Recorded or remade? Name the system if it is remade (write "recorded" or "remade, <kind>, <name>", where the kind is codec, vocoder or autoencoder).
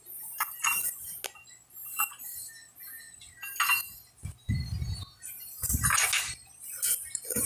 recorded